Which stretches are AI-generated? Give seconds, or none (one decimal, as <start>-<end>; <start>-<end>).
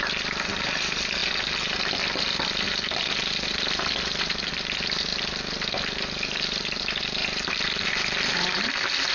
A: 0.0-1.2; 4.5-5.1; 5.8-9.1